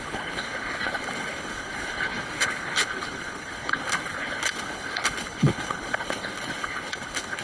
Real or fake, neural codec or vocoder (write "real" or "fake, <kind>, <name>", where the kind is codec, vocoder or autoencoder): fake, codec, HILCodec